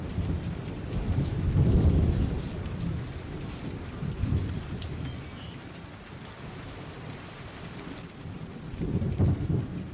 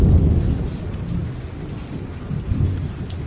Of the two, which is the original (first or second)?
second